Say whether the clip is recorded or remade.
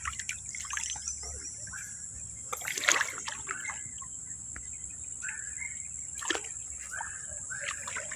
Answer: recorded